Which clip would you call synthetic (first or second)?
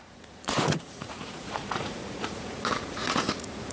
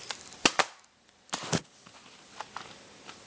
first